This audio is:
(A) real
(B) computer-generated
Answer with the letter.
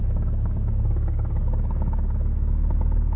B